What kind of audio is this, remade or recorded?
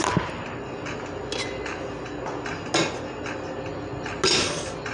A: recorded